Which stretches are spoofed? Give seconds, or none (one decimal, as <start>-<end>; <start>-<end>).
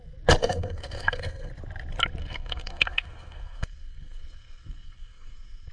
0.4-1.5; 2.2-5.7